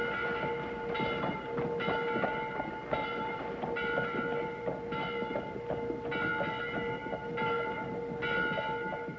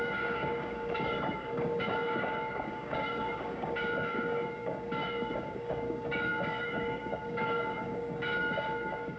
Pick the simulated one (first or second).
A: second